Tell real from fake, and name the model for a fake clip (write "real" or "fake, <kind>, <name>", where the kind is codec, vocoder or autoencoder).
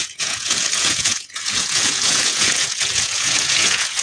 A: fake, vocoder, Vocos